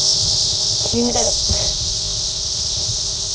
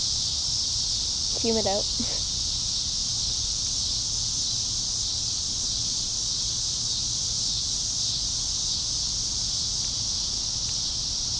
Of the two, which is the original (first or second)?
second